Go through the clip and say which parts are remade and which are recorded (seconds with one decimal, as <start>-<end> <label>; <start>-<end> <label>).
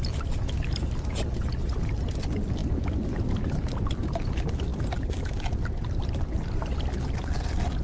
0.0-7.8 recorded